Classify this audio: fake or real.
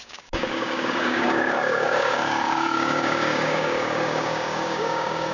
fake